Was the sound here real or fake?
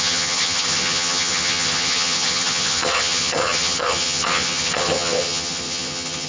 fake